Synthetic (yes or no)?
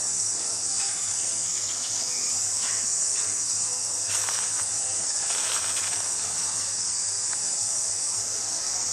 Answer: yes